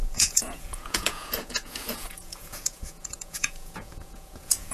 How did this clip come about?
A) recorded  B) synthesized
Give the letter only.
B